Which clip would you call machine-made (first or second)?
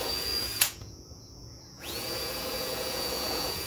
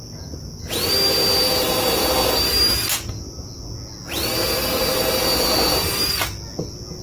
first